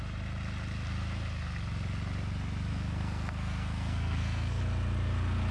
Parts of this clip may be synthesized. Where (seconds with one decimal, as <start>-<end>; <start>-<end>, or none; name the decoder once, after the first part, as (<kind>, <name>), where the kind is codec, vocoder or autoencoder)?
2.7-4.6 (codec, SNAC)